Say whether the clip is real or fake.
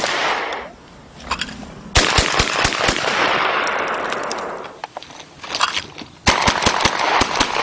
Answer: real